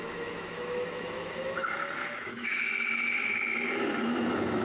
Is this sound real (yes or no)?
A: no